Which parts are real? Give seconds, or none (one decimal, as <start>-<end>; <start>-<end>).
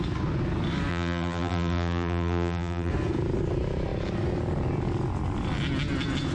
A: 0.0-0.9; 2.9-6.3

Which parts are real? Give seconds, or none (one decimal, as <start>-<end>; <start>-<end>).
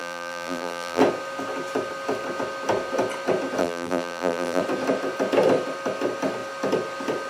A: 1.0-3.6; 4.6-7.3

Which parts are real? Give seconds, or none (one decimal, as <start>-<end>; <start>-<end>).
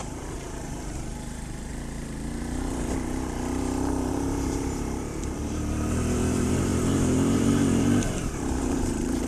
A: 1.7-4.1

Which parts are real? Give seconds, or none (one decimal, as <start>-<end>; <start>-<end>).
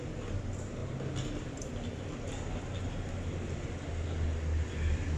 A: 0.0-5.2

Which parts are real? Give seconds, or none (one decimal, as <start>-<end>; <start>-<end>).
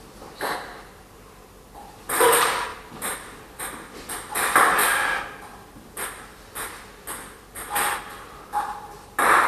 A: 0.0-2.7; 3.6-4.8; 5.4-9.5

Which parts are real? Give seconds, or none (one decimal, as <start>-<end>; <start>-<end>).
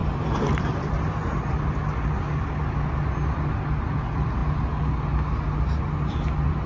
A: 1.8-3.8; 4.4-5.8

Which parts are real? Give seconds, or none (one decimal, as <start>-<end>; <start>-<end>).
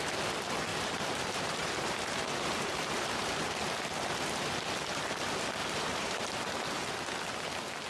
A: 0.0-0.7; 3.3-5.6; 6.4-7.9